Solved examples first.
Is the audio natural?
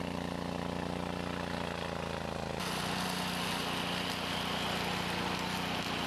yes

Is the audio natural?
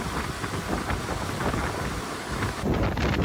yes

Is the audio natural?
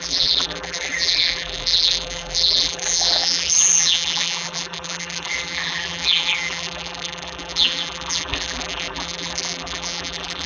no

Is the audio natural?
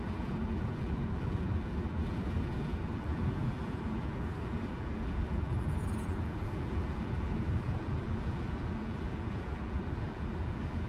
no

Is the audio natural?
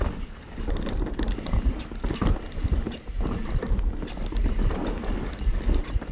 no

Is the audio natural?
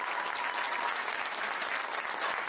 yes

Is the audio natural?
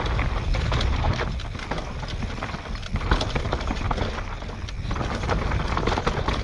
yes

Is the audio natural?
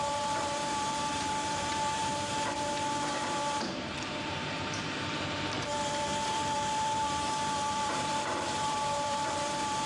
no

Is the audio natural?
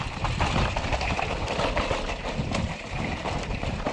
no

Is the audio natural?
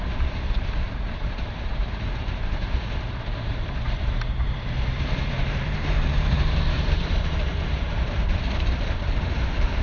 no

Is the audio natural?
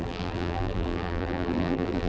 no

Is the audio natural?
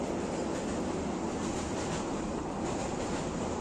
yes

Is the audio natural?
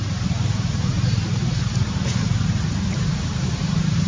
no